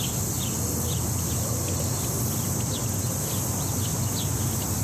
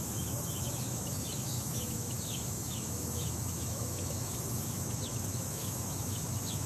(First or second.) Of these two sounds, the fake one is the second